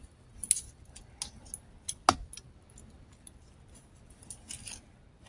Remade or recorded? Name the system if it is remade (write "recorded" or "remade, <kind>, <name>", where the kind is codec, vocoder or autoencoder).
recorded